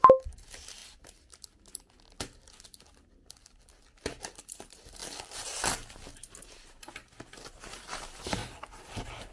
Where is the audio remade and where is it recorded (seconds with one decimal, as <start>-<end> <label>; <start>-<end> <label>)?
0.0-0.8 remade; 0.8-4.2 recorded; 4.2-5.0 remade; 5.0-7.5 recorded; 7.5-9.3 remade